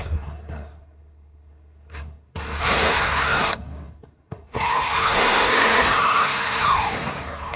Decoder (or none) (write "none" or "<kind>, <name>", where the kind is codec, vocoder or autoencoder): codec, SNAC